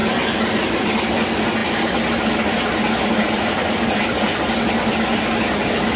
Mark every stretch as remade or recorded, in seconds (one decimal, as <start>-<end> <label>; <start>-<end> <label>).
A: 0.0-6.0 recorded